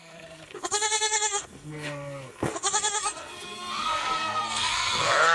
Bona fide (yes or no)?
no